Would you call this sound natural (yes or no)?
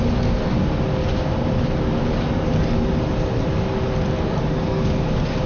yes